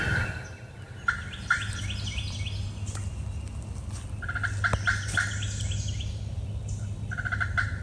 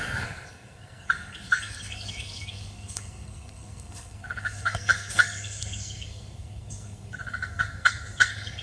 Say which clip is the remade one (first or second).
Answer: second